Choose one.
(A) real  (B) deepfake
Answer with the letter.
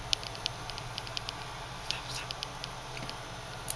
A